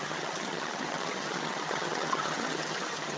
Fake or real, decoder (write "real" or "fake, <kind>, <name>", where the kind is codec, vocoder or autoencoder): fake, vocoder, HiFi-GAN